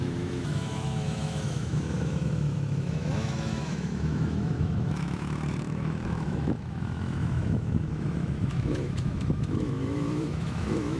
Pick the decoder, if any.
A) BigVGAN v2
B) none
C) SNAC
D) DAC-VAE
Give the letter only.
D